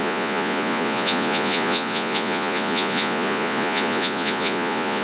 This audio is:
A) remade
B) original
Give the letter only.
A